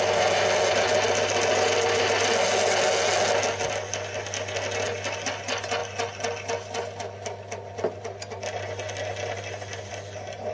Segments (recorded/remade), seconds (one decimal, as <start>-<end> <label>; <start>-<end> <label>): 0.0-10.5 recorded